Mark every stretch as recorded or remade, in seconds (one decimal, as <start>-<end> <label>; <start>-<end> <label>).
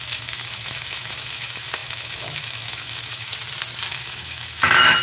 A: 0.0-3.3 remade; 3.3-3.9 recorded; 3.9-5.0 remade